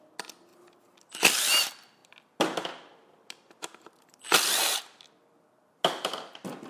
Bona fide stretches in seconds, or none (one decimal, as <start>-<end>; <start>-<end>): 0.0-6.7